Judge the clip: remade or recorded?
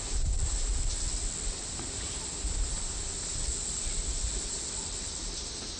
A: recorded